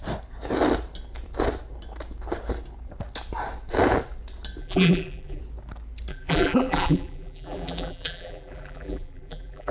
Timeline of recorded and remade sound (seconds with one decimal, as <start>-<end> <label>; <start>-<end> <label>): 0.0-4.6 recorded; 4.6-5.4 remade; 5.4-6.1 recorded; 6.1-9.7 remade